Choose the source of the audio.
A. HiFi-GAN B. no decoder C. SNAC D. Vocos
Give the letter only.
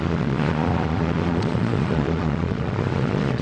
D